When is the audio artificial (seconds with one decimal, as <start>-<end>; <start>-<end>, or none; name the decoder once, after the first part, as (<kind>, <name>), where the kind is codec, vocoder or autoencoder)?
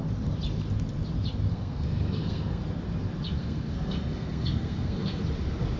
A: 1.5-2.6 (codec, SNAC); 3.4-5.2